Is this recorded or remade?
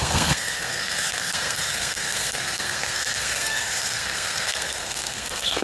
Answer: remade